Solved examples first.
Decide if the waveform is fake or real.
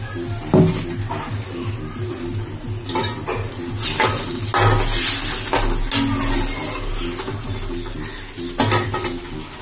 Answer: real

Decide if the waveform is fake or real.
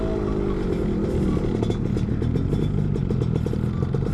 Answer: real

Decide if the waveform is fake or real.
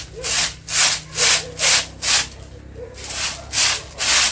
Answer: real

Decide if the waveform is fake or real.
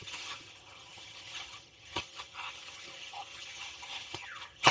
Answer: fake